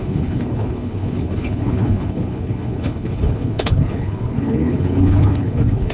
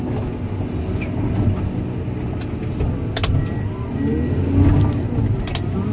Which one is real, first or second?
second